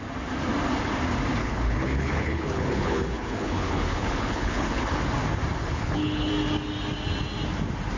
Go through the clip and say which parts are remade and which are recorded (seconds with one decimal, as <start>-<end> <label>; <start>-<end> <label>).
0.0-1.4 recorded; 1.4-5.0 remade; 5.0-5.6 recorded; 5.6-6.3 remade; 6.3-8.0 recorded